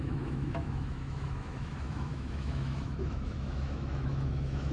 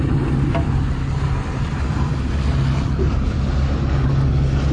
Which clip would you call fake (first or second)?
first